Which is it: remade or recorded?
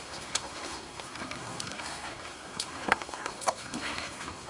remade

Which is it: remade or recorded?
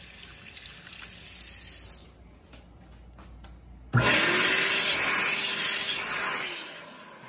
recorded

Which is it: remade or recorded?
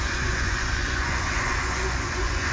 remade